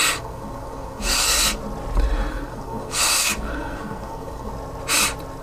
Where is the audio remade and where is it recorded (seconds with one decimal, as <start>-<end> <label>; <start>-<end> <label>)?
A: 0.0-1.6 remade; 1.6-2.3 recorded; 2.3-4.5 remade; 4.5-5.4 recorded